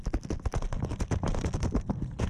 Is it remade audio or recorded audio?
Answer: recorded